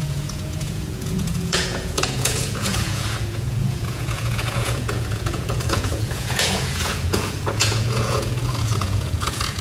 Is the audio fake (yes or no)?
yes